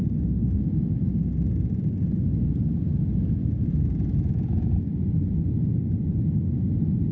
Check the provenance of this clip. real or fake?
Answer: real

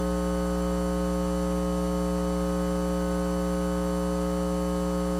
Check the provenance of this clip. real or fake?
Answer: real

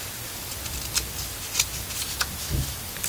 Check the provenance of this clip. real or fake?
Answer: real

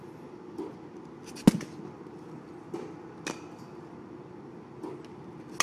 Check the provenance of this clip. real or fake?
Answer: real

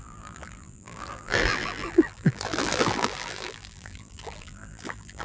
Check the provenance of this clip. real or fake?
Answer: fake